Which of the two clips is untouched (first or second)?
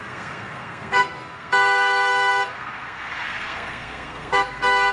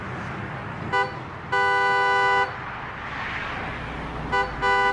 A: second